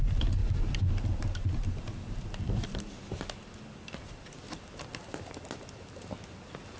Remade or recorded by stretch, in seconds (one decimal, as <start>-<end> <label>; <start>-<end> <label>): 0.0-6.8 recorded